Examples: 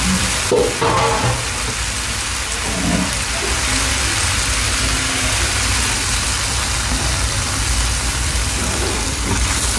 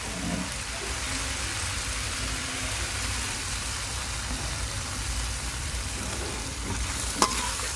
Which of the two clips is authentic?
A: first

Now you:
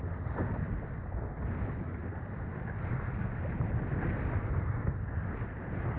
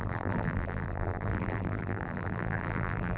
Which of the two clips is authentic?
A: first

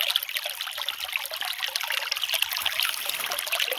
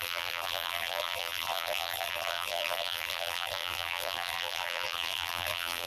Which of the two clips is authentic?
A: first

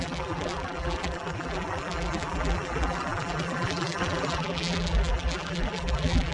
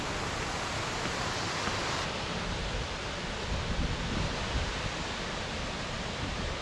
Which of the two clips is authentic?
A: second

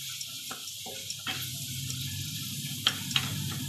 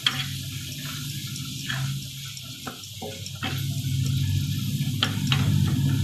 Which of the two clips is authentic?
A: second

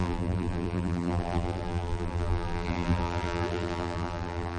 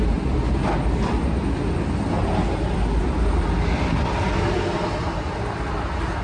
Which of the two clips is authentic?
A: second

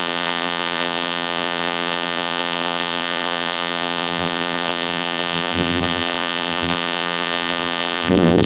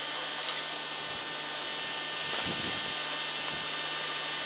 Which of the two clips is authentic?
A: second